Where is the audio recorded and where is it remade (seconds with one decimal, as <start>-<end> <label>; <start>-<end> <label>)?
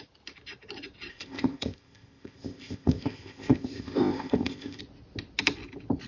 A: 0.0-1.1 recorded; 1.1-4.8 remade; 4.8-6.1 recorded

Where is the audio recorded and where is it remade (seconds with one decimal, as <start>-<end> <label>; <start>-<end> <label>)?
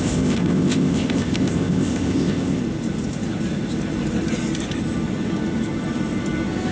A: 0.0-2.6 remade; 2.6-6.7 recorded